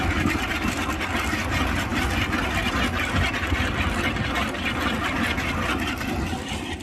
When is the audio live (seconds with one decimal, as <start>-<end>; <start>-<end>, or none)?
0.0-6.8